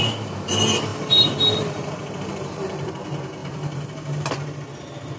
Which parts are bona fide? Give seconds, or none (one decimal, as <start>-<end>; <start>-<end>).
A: 0.0-0.9; 2.9-3.4; 4.3-5.2